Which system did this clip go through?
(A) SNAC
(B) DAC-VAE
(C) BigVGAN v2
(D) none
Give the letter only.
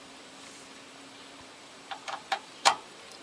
C